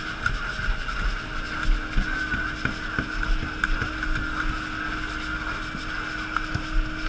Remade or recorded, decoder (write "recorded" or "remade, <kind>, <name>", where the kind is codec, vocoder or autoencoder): recorded